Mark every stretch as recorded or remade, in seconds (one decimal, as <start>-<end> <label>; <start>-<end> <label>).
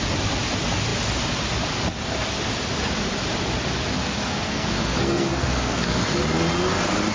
0.0-4.0 recorded; 4.0-6.0 remade; 6.0-7.1 recorded